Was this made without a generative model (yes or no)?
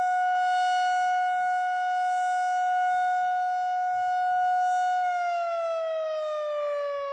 yes